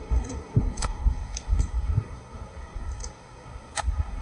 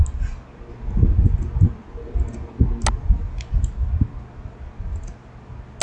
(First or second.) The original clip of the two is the second